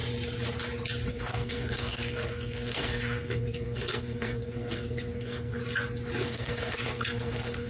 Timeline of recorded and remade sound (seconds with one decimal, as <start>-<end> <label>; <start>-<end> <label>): 0.0-1.1 recorded; 1.1-5.6 remade; 5.6-6.2 recorded; 6.2-7.7 remade